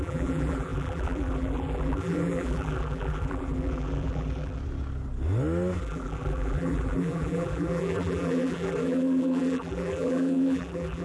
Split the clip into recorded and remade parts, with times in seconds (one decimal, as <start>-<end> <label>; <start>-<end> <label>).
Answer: 0.0-4.6 remade; 4.6-5.8 recorded; 5.8-11.0 remade